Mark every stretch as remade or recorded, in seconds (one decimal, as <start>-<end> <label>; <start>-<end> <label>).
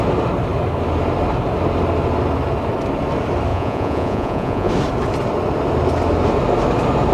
0.0-3.5 recorded; 3.5-4.7 remade; 4.7-7.1 recorded